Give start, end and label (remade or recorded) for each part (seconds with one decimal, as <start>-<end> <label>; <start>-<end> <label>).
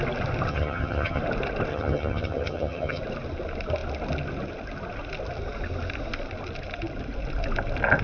0.0-0.5 recorded; 0.5-1.2 remade; 1.2-1.7 recorded; 1.7-3.0 remade; 3.0-8.0 recorded